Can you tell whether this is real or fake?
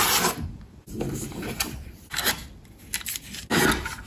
real